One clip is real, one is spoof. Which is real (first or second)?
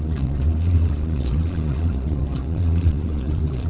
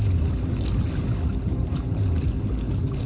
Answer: second